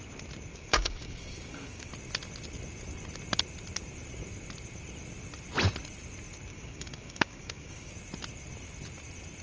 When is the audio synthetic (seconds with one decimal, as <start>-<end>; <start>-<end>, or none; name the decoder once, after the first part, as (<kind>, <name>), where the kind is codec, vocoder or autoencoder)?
0.5-1.9 (codec, DAC); 6.5-7.9